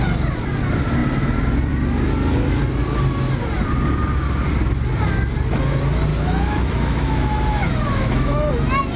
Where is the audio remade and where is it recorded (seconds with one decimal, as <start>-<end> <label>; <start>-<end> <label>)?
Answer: 0.0-6.1 recorded; 6.1-8.5 remade; 8.5-9.0 recorded